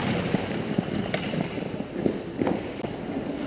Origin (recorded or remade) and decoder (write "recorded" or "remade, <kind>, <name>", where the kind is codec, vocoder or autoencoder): recorded